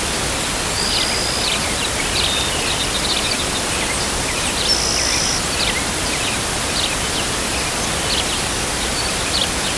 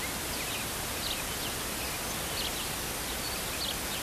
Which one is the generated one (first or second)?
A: first